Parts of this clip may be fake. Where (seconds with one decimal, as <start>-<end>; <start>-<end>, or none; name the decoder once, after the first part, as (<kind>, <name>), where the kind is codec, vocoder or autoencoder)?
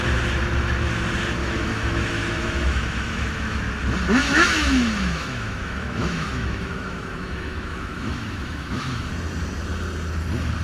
1.4-3.6 (autoencoder, DAC-VAE); 4.2-9.1